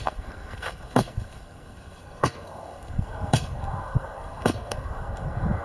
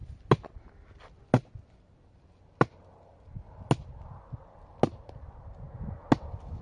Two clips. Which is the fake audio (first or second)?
first